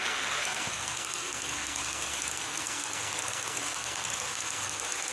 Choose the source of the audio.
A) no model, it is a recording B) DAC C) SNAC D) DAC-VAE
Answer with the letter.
C